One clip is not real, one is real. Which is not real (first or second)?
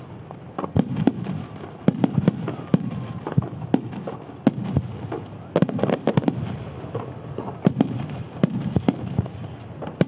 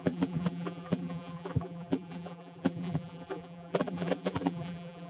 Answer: second